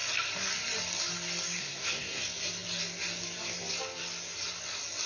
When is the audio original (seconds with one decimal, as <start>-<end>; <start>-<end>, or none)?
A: 0.0-1.6; 2.2-5.1